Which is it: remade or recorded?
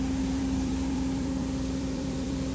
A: remade